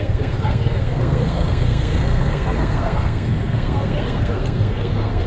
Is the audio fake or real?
fake